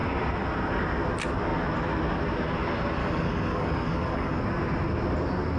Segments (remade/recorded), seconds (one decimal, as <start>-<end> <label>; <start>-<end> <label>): 0.0-3.0 recorded; 3.0-4.4 remade; 4.4-5.6 recorded